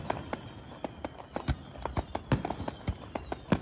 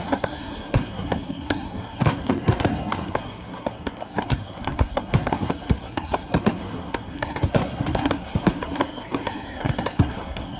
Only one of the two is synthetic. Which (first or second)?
second